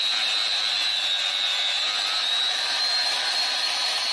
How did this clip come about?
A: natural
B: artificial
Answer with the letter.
A